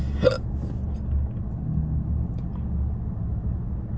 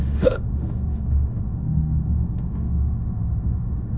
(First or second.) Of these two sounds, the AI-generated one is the second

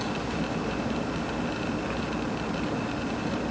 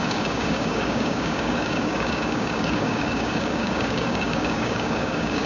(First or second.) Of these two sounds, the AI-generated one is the second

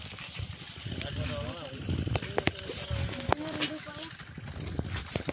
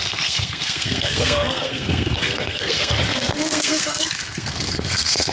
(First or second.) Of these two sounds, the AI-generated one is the second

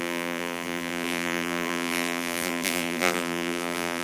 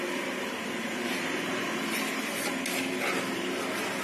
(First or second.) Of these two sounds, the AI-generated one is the first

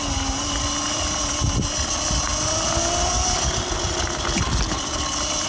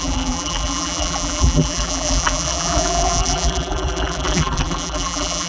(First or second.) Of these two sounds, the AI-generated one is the second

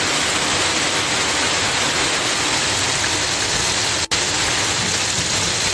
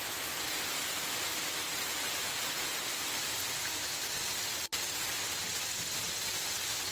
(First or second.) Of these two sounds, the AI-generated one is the second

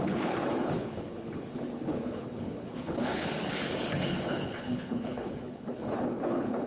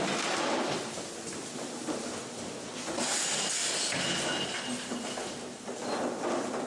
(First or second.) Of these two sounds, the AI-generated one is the first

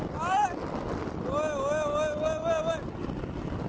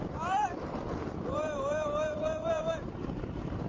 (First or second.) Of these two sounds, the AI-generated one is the second